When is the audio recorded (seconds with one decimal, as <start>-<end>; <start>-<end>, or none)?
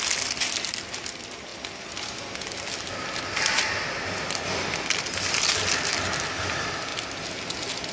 0.0-7.9